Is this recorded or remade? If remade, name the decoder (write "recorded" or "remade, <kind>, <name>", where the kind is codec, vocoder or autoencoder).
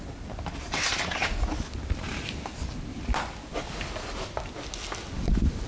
recorded